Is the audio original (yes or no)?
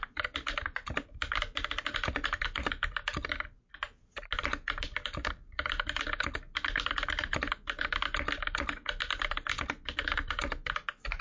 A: yes